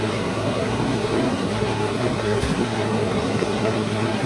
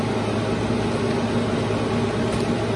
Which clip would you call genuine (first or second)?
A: second